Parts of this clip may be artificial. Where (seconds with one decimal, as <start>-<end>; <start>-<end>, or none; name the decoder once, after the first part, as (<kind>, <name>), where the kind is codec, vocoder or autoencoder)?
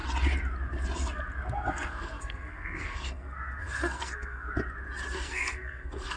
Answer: 1.7-4.5 (codec, SNAC); 5.1-6.2